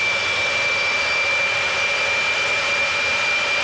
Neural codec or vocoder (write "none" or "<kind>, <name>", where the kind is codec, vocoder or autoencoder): none